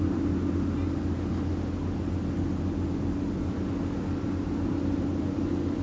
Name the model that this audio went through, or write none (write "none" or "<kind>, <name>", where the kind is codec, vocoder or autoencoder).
none